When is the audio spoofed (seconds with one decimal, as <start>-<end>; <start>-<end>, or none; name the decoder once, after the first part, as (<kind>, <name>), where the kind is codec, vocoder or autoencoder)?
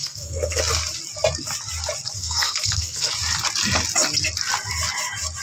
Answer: 0.0-0.6 (codec, SNAC); 2.2-3.1